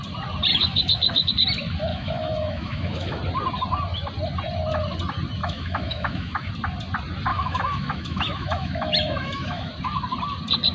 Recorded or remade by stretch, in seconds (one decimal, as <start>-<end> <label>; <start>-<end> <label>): 0.0-0.5 recorded; 0.5-1.3 remade; 1.3-1.9 recorded; 1.9-3.2 remade; 3.2-5.4 recorded; 5.4-6.5 remade; 6.5-7.3 recorded; 7.3-9.7 remade; 9.7-10.7 recorded